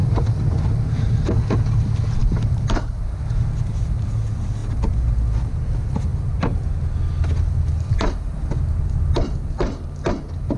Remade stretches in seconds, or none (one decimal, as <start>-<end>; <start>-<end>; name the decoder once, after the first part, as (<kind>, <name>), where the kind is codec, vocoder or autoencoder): 0.0-1.6 (vocoder, BigVGAN v2); 2.2-4.1; 4.6-5.1